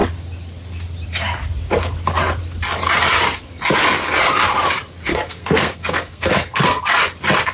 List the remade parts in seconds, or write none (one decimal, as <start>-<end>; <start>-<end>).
5.1-6.8